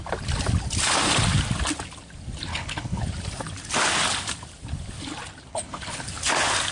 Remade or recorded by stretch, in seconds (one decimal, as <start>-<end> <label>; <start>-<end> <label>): 0.0-2.5 recorded; 2.5-3.0 remade; 3.0-5.5 recorded; 5.5-6.0 remade; 6.0-6.7 recorded